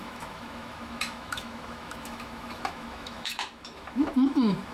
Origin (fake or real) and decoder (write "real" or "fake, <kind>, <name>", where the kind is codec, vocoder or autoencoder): fake, autoencoder, DAC-VAE